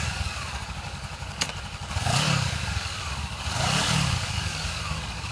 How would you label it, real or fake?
fake